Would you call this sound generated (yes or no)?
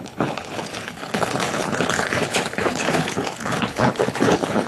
yes